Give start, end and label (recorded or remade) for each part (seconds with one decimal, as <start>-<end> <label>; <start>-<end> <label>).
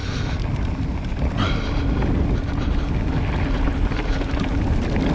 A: 0.0-5.1 recorded